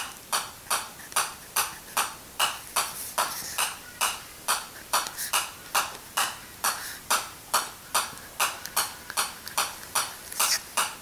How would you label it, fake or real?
fake